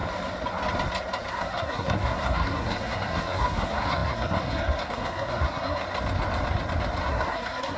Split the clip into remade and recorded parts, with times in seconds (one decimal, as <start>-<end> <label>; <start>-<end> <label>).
0.0-1.3 recorded; 1.3-5.8 remade; 5.8-7.1 recorded; 7.1-7.8 remade